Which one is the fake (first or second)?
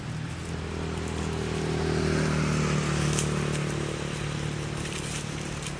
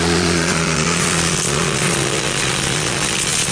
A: second